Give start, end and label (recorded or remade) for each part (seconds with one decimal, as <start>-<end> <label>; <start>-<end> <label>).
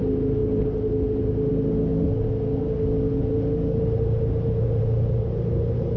0.0-6.0 recorded